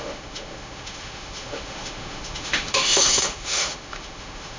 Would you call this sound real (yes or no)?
no